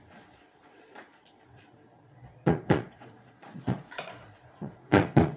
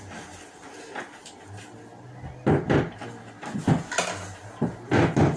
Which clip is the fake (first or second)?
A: first